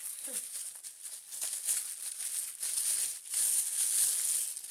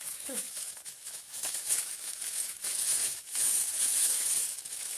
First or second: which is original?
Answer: first